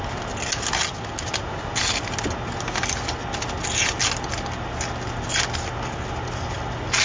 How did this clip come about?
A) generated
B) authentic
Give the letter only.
B